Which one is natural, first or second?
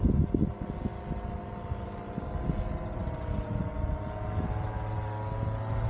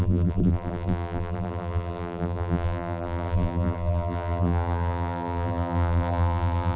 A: first